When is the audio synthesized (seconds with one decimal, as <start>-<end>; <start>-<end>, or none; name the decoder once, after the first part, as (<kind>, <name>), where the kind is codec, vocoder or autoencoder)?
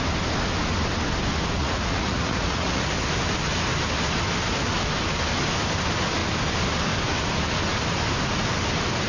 1.6-2.9 (vocoder, Vocos)